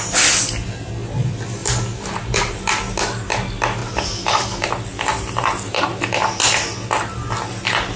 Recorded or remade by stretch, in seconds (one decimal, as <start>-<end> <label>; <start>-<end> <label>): 0.0-1.6 recorded; 1.6-2.6 remade; 2.6-3.8 recorded; 3.8-5.8 remade; 5.8-8.0 recorded